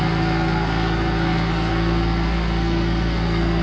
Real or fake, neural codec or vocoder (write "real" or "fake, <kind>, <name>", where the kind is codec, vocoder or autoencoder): fake, codec, SNAC